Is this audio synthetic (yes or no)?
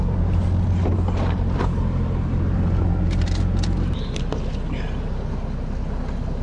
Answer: no